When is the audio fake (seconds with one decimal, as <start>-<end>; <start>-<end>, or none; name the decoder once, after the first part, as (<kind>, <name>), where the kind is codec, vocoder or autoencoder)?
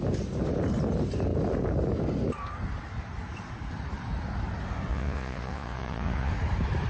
4.9-6.3 (vocoder, Vocos)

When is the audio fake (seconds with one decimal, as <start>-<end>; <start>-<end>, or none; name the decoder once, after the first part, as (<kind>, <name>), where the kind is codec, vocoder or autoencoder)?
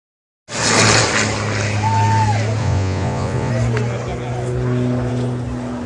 2.6-3.5 (vocoder, Vocos)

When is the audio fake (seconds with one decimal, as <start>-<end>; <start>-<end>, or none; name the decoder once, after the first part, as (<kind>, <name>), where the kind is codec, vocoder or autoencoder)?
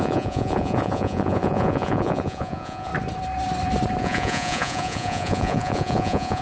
0.0-2.9 (vocoder, Vocos); 4.0-6.4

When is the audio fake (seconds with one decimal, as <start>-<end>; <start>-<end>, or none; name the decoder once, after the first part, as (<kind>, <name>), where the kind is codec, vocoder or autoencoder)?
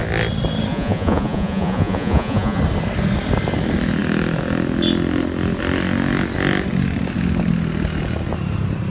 0.7-2.6 (vocoder, Vocos)